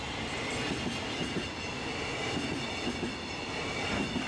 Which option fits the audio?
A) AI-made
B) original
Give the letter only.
B